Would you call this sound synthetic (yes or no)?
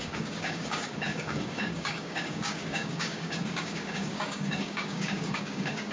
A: yes